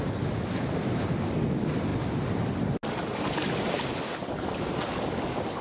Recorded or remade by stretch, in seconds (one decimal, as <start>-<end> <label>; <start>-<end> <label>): 0.0-5.6 recorded